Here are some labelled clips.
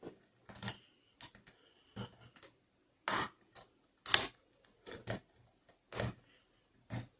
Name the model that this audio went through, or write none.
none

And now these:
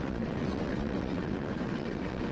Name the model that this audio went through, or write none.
vocoder, WaveNeXt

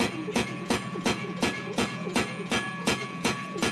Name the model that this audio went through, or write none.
vocoder, Vocos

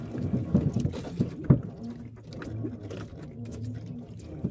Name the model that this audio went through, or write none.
none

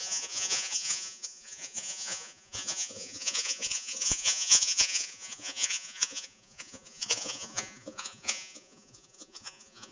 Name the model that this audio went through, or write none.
vocoder, Vocos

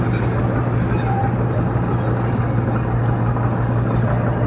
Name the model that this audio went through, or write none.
none